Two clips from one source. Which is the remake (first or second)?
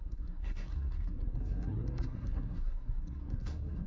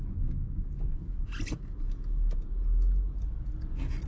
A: first